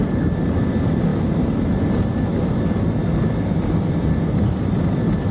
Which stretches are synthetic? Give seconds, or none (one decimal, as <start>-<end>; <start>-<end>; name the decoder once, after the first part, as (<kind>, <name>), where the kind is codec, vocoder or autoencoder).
none